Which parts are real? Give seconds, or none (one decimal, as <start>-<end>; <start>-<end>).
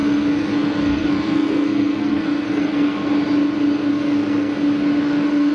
3.1-3.9; 4.5-5.0